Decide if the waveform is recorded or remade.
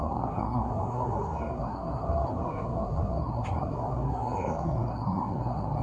remade